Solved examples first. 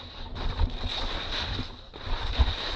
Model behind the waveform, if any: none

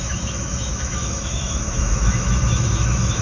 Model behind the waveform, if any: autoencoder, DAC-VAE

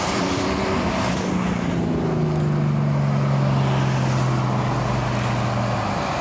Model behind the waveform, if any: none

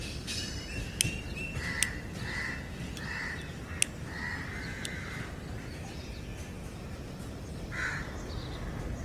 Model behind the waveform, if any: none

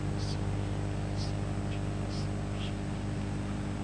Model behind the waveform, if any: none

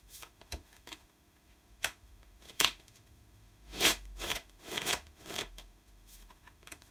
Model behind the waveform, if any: autoencoder, DAC-VAE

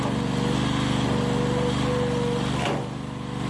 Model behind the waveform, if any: none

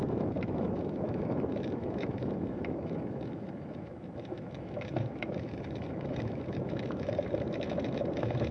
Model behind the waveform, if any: autoencoder, DAC-VAE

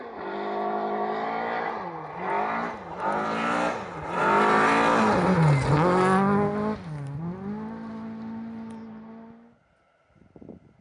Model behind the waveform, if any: none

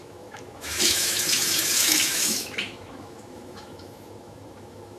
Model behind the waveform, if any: autoencoder, DAC-VAE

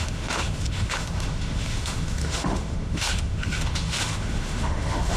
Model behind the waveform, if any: autoencoder, DAC-VAE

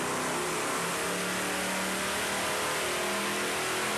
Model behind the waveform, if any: none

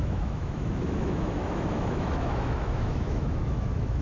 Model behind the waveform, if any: autoencoder, DAC-VAE